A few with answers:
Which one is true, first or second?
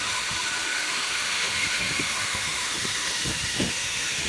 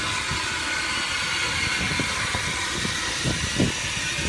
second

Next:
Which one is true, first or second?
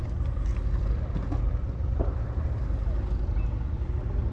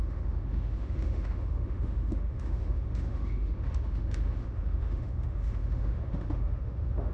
first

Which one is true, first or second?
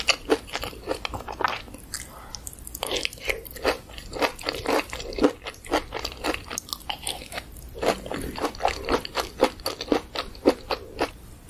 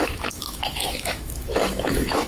first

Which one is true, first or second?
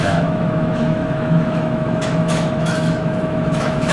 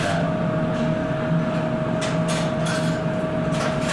second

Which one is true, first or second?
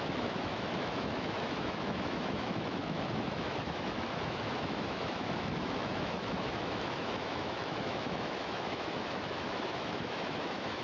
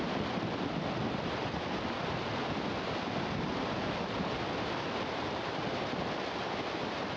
second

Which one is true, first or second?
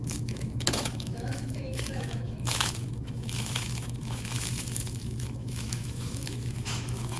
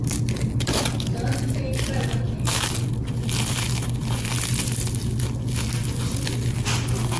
second